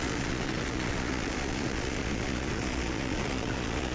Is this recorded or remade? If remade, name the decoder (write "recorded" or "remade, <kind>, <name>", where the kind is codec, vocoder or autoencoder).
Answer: remade, vocoder, Vocos